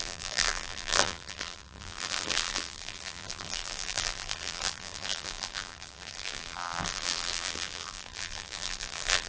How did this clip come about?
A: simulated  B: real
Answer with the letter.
A